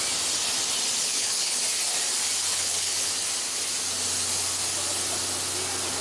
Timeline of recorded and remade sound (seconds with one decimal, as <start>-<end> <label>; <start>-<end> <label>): 0.0-1.0 recorded; 1.0-1.6 remade; 1.6-2.5 recorded; 2.5-3.1 remade; 3.1-6.0 recorded